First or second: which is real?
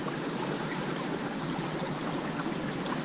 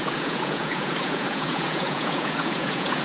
first